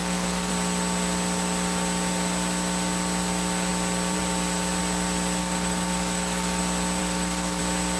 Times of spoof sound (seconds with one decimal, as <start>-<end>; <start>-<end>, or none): 0.0-0.5; 5.4-6.6; 7.0-7.6